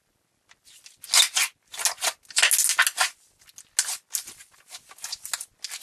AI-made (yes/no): no